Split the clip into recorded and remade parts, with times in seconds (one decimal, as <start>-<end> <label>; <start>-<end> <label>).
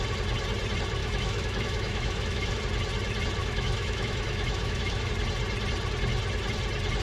0.0-1.0 recorded; 1.0-2.6 remade; 2.6-3.4 recorded; 3.4-5.1 remade; 5.1-7.0 recorded